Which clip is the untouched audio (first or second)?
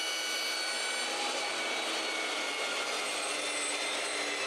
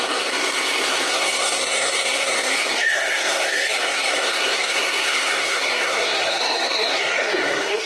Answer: first